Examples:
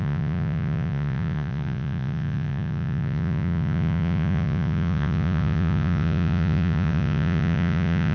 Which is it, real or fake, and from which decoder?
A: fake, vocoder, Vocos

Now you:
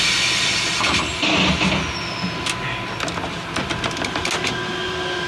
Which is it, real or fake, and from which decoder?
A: real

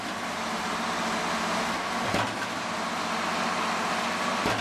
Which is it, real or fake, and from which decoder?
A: real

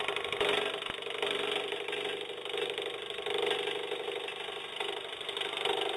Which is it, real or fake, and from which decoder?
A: real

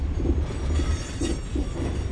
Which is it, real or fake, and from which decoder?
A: real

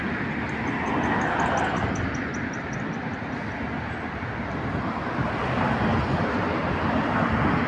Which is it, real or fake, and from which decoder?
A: real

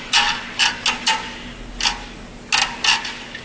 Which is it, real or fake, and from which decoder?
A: real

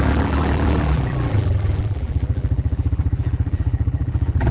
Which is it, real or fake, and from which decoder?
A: fake, vocoder, BigVGAN v2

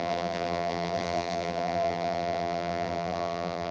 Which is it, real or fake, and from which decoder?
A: fake, vocoder, BigVGAN v2